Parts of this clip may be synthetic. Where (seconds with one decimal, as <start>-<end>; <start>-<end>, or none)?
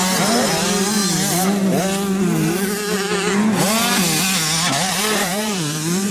0.0-1.0; 4.7-6.1